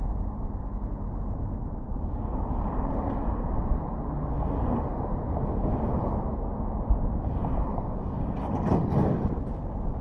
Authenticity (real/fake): real